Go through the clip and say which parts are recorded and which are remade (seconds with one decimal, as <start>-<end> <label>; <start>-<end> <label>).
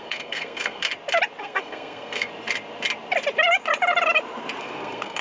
0.0-0.9 remade; 0.9-1.4 recorded; 1.4-2.3 remade; 2.3-4.6 recorded; 4.6-5.2 remade